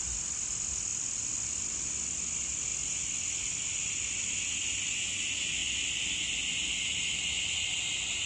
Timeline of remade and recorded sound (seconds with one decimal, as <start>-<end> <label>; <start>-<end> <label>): 0.0-8.3 recorded